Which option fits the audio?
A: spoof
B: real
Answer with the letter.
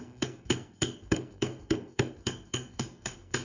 A